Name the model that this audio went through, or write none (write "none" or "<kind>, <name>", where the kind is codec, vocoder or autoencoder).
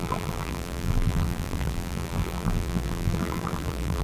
vocoder, BigVGAN v2